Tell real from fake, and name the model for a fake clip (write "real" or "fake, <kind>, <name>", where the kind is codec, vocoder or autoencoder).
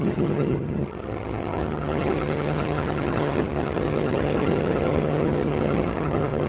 fake, vocoder, HiFi-GAN